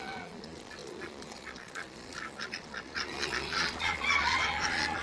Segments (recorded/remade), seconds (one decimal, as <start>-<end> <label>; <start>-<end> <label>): 0.0-5.0 remade